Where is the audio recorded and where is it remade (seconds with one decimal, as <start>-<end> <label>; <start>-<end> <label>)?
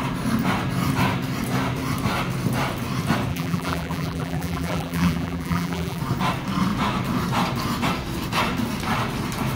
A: 0.0-3.3 recorded; 3.3-6.0 remade; 6.0-9.6 recorded